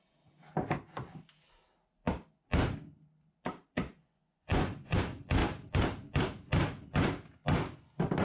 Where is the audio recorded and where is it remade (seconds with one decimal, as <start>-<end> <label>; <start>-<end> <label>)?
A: 0.0-4.0 recorded; 4.0-5.0 remade; 5.0-8.2 recorded